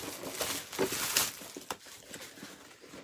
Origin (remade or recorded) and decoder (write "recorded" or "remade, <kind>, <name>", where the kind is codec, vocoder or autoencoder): recorded